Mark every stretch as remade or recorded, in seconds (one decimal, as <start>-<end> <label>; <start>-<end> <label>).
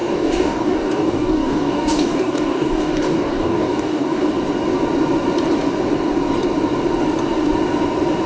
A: 0.0-4.3 remade; 4.3-8.3 recorded